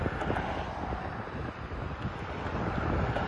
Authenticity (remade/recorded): recorded